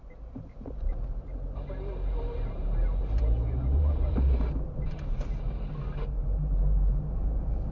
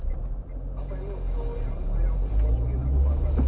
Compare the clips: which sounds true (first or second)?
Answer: second